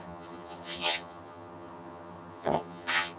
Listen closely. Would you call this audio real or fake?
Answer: fake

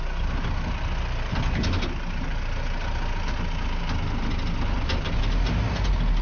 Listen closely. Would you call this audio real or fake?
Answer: real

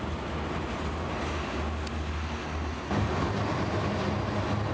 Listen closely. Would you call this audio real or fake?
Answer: real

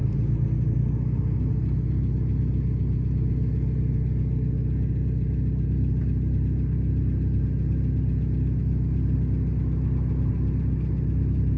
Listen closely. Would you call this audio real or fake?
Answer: real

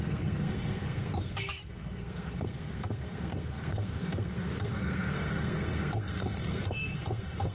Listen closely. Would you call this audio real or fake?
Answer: fake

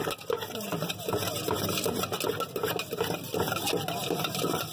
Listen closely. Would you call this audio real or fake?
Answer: real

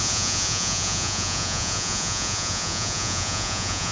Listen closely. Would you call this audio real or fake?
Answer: fake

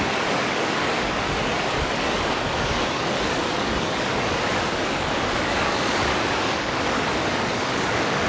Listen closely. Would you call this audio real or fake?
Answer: fake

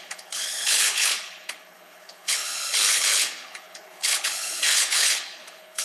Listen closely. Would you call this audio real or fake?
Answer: fake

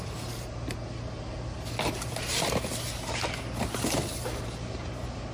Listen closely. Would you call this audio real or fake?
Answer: real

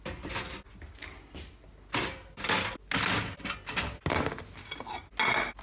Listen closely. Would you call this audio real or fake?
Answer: real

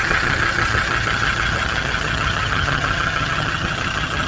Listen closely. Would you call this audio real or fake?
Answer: fake